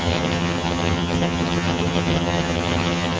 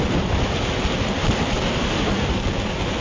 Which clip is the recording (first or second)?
second